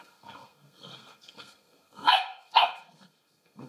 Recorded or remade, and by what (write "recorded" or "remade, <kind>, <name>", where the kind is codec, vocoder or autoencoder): remade, codec, SNAC